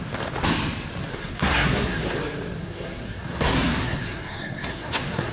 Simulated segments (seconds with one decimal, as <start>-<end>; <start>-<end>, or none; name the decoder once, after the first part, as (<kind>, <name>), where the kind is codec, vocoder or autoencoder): 1.1-2.2 (codec, SNAC); 2.6-5.3